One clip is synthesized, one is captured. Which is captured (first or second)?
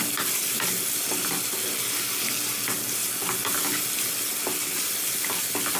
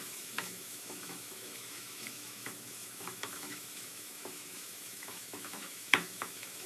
first